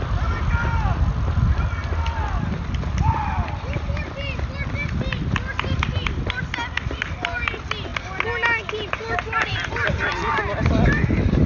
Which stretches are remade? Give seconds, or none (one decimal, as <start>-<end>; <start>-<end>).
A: none

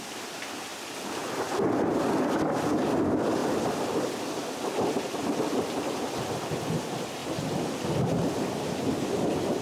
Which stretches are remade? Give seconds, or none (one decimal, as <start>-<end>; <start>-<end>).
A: none

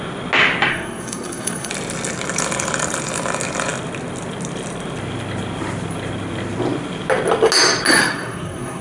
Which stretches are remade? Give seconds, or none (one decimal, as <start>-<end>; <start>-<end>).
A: 0.7-1.7; 7.9-8.8

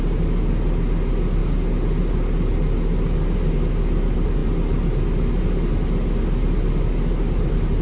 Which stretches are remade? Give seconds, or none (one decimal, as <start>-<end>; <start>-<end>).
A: none

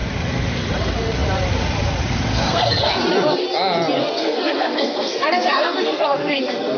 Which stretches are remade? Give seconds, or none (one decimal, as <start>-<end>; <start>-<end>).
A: 2.3-2.9; 4.0-6.8

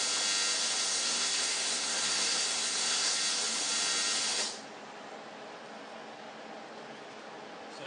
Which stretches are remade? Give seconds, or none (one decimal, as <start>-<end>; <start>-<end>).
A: 0.9-3.2